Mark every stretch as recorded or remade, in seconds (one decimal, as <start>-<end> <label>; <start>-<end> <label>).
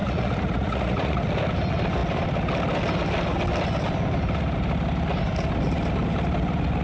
0.0-1.2 remade; 1.2-6.8 recorded